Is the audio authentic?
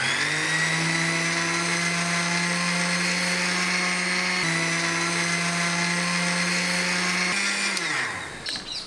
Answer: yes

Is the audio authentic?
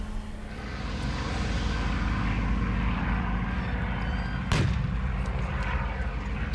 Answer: yes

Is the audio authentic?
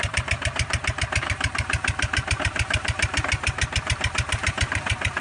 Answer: no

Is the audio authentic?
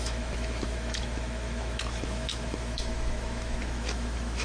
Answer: no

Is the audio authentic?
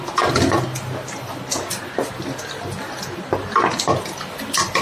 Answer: yes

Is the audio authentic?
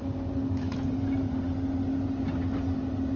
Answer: yes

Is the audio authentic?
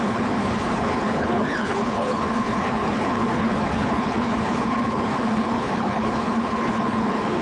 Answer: no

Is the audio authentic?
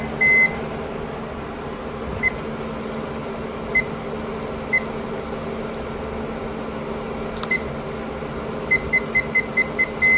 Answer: yes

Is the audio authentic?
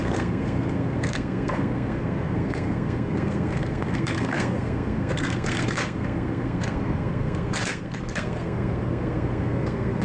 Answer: no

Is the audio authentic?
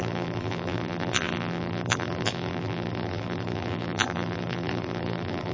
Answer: no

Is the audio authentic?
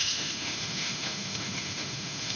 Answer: no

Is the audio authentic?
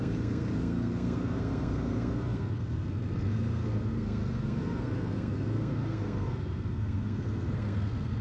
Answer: no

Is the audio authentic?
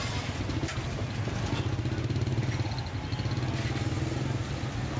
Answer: yes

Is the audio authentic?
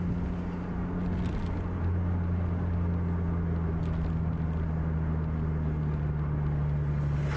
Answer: yes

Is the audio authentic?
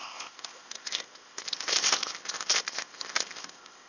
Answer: no